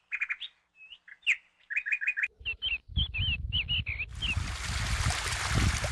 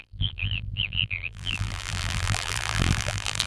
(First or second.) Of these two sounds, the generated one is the second